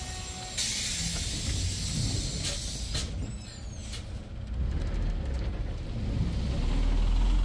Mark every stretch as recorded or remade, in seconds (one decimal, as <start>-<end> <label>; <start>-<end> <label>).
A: 0.0-7.4 recorded